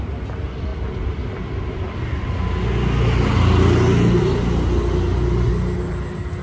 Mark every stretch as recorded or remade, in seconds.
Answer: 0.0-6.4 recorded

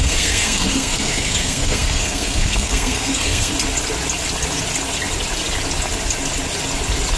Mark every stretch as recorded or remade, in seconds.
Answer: 0.0-3.5 remade; 3.5-7.2 recorded

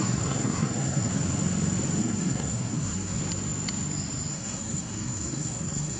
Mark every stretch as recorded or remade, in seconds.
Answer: 0.0-1.1 remade; 1.1-2.0 recorded; 2.0-3.2 remade; 3.2-4.3 recorded; 4.3-6.0 remade

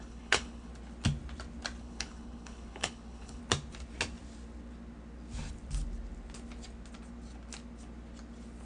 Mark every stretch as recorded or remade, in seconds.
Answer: 0.0-0.7 remade; 0.7-1.8 recorded; 1.8-3.4 remade; 3.4-8.7 recorded

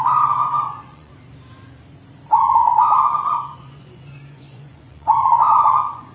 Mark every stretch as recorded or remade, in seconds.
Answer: 0.0-0.4 recorded; 0.4-1.1 remade; 1.1-2.6 recorded; 2.6-6.1 remade

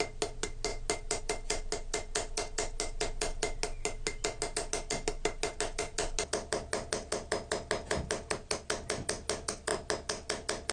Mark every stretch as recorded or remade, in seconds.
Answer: 0.0-10.7 recorded

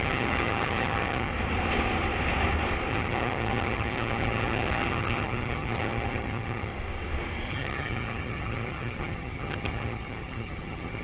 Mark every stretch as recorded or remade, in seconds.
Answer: 0.0-1.3 remade; 1.3-2.9 recorded; 2.9-6.7 remade; 6.7-7.5 recorded; 7.5-11.0 remade

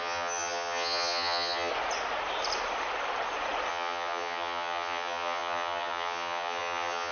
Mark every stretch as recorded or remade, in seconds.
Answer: 0.0-1.7 remade; 1.7-3.7 recorded; 3.7-7.1 remade